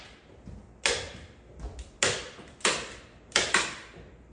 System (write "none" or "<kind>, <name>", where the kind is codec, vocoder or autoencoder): none